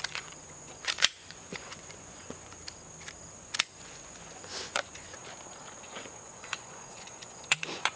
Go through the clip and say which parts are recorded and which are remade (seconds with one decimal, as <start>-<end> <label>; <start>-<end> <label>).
0.0-2.6 remade; 2.6-3.3 recorded; 3.3-5.2 remade; 5.2-5.8 recorded; 5.8-8.0 remade